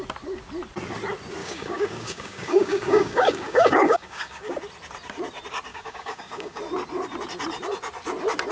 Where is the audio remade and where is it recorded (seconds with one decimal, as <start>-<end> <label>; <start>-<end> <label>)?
0.0-1.4 recorded; 1.4-4.5 remade; 4.5-5.7 recorded; 5.7-6.6 remade; 6.6-8.5 recorded